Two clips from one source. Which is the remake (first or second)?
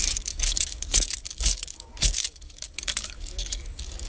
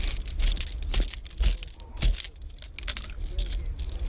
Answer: first